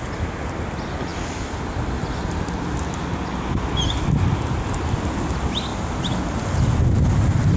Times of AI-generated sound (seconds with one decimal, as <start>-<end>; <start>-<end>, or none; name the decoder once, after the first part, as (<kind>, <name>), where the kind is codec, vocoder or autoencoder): none